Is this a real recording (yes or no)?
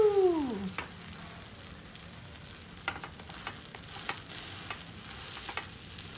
yes